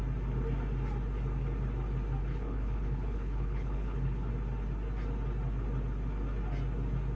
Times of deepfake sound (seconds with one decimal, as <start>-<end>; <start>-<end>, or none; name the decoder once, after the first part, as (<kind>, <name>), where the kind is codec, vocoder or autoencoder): 2.2-4.3 (codec, HILCodec)